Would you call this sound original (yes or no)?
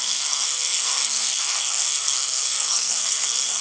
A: no